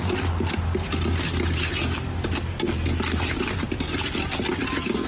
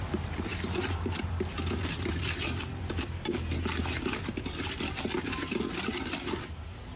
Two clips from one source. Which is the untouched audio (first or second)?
first